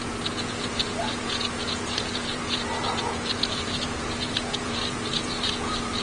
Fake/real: fake